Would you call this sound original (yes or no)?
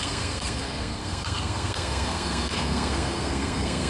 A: no